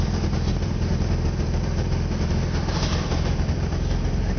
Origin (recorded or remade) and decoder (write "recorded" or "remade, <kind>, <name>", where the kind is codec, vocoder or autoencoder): remade, vocoder, BigVGAN v2